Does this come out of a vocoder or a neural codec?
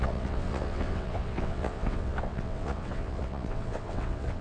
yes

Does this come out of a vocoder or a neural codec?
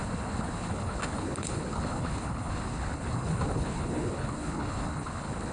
yes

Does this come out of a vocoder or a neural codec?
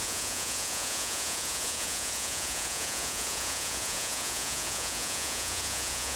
yes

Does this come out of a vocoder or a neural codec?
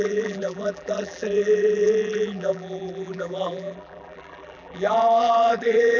yes